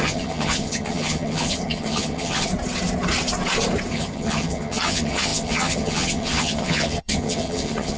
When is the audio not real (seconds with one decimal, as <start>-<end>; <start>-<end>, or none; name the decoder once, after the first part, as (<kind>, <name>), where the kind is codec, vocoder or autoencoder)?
0.0-2.5 (vocoder, HiFi-GAN); 3.9-8.0